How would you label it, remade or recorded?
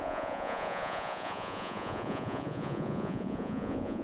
remade